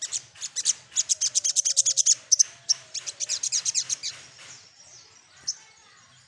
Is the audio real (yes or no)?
yes